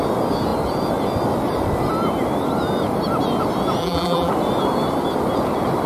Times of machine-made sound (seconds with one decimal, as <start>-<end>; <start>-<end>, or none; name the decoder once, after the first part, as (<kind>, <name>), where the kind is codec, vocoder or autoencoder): 3.8-4.3 (vocoder, BigVGAN v2)